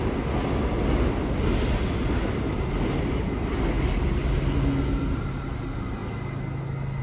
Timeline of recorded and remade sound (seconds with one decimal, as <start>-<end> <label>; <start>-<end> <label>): 0.0-7.0 recorded